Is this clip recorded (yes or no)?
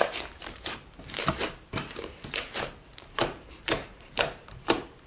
no